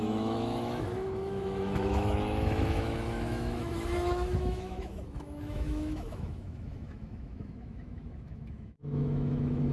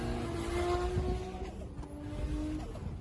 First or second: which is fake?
first